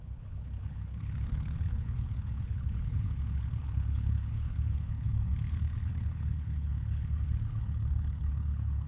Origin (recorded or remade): remade